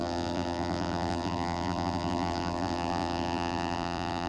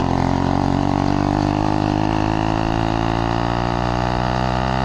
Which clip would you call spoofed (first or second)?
first